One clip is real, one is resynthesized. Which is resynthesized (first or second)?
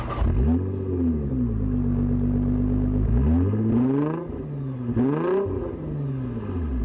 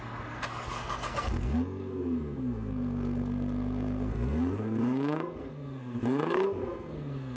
second